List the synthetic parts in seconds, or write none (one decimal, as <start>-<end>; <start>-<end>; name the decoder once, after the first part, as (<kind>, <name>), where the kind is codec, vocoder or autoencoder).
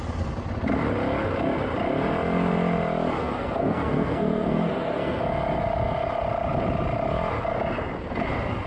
3.2-5.2 (codec, SNAC)